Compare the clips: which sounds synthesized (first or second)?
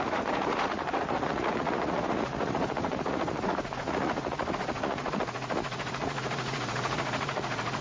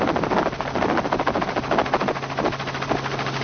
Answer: first